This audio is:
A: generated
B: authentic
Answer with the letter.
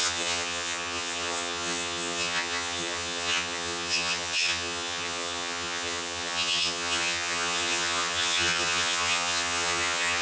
A